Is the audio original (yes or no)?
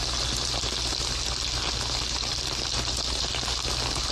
yes